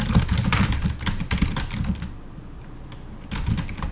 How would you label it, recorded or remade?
recorded